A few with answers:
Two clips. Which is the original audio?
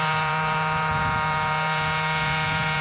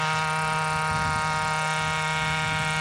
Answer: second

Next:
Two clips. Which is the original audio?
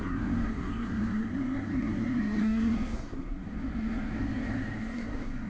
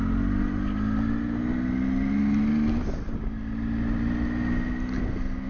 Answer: second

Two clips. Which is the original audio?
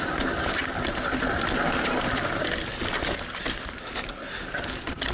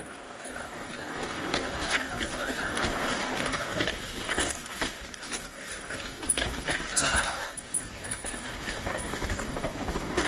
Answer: first